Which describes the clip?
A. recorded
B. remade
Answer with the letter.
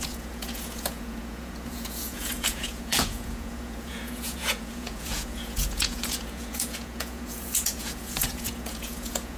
B